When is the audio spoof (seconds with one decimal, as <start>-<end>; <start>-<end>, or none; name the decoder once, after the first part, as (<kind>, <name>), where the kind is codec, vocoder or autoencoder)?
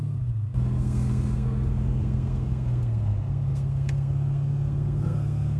0.0-5.6 (codec, SNAC)